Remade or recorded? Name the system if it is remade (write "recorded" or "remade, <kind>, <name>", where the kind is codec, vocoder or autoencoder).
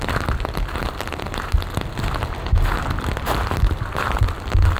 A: recorded